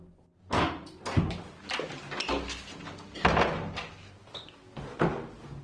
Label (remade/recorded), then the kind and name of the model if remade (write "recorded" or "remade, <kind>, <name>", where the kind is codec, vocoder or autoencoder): recorded